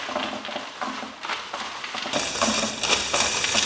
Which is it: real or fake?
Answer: real